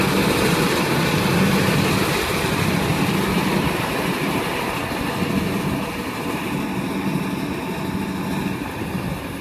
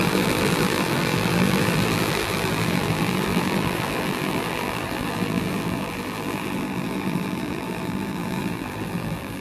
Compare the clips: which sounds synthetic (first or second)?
second